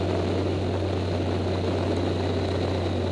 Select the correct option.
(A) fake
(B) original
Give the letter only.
B